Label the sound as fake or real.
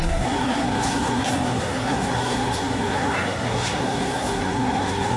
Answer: fake